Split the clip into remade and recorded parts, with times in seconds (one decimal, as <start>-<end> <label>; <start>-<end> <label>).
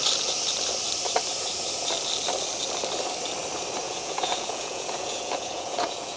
0.0-3.8 recorded; 3.8-6.2 remade